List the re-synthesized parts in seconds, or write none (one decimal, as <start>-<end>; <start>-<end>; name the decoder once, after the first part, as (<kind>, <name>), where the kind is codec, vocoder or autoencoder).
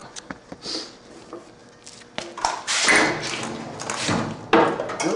0.0-0.5 (vocoder, Vocos)